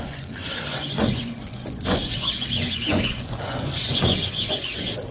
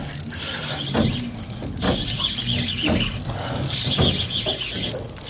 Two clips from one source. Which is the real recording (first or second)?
second